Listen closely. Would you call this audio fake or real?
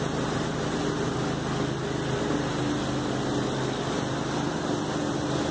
real